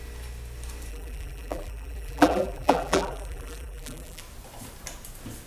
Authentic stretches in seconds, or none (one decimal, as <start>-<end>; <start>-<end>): 0.0-0.9; 4.2-5.5